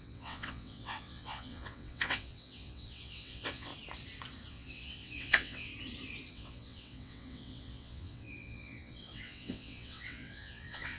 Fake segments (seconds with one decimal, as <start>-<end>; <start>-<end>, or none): 0.0-3.7; 4.5-5.7; 6.3-11.0